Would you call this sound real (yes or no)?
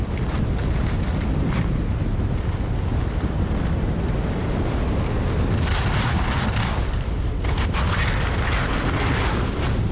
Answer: yes